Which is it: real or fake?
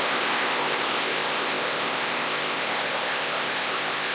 fake